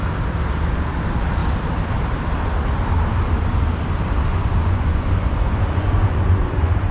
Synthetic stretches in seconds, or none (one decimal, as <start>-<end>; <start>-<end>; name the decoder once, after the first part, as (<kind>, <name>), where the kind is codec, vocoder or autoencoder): 4.3-6.9 (vocoder, Vocos)